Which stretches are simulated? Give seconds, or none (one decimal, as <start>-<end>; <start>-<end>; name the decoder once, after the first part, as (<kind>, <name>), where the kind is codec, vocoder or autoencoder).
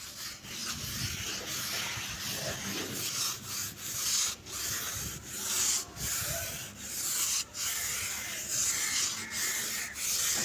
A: none